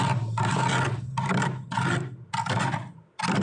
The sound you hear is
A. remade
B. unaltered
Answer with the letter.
B